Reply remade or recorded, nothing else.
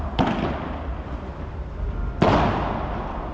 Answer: recorded